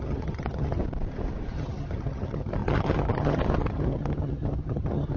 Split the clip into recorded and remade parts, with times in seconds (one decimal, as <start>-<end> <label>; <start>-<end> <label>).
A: 0.0-0.8 remade; 0.8-1.5 recorded; 1.5-5.2 remade